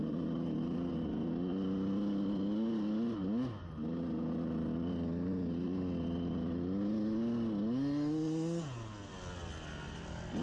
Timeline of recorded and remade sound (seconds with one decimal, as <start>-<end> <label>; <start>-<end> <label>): 0.0-10.4 recorded